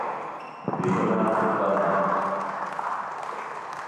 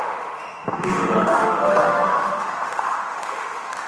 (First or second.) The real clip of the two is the first